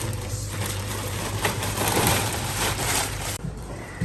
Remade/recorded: remade